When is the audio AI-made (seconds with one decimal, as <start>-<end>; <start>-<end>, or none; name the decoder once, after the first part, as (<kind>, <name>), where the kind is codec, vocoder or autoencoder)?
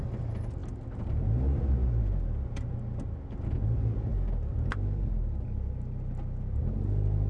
none